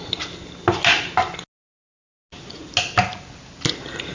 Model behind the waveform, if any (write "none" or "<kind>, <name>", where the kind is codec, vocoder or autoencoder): none